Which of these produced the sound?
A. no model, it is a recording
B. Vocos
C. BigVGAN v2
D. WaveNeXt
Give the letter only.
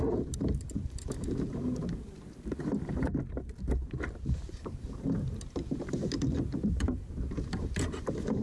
C